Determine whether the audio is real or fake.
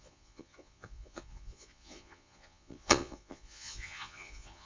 fake